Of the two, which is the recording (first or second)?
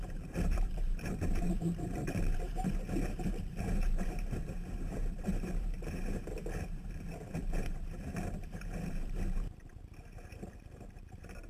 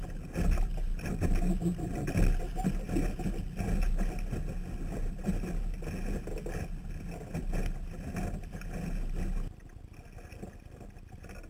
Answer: second